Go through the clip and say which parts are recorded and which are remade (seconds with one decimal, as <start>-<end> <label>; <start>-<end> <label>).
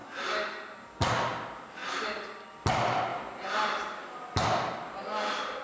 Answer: 0.0-5.6 recorded